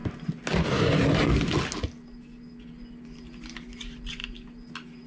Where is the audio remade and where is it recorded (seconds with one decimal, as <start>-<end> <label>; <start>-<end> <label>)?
0.0-5.1 recorded